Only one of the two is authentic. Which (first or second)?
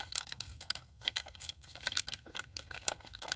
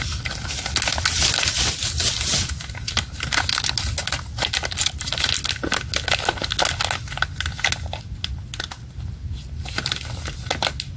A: second